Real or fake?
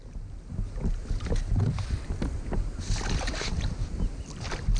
real